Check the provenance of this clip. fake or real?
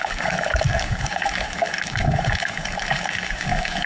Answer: fake